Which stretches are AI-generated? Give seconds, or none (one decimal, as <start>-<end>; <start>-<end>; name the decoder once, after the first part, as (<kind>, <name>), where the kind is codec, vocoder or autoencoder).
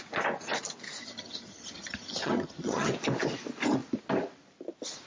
1.0-2.9 (vocoder, HiFi-GAN)